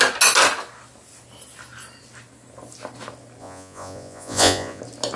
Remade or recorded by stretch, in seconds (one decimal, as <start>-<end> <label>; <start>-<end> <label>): 0.0-3.4 recorded; 3.4-4.8 remade; 4.8-5.2 recorded